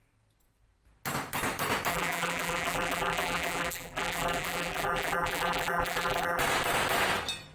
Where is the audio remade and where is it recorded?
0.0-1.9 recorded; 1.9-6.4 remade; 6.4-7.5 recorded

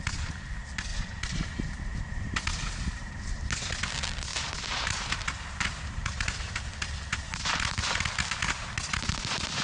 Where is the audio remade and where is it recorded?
0.0-0.9 recorded; 0.9-3.5 remade; 3.5-4.3 recorded; 4.3-6.6 remade; 6.6-9.6 recorded

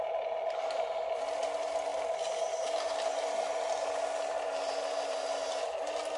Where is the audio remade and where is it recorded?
0.0-6.2 recorded

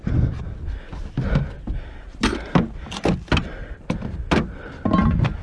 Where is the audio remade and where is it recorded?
0.0-3.6 recorded; 3.6-4.1 remade; 4.1-5.4 recorded